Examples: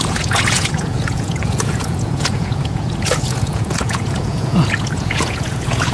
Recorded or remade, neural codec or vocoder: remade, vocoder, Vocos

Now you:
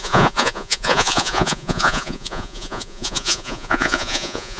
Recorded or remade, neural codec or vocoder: remade, vocoder, Vocos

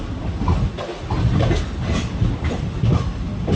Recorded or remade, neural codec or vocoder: recorded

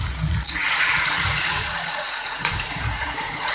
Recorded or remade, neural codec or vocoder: remade, vocoder, Vocos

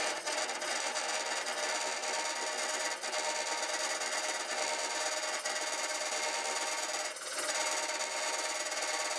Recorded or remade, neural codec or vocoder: recorded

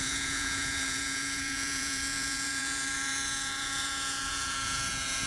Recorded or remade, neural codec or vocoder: remade, vocoder, Vocos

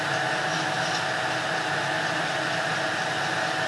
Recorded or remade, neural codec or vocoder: recorded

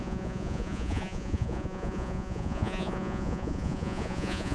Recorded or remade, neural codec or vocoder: remade, vocoder, Vocos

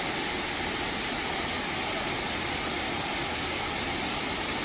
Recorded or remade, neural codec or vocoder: recorded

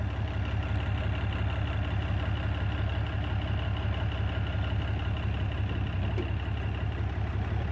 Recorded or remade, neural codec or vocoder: recorded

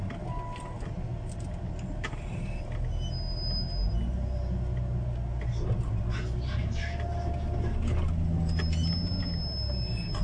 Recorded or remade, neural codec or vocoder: recorded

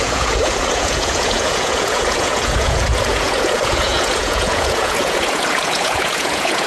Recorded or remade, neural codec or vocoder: remade, vocoder, Vocos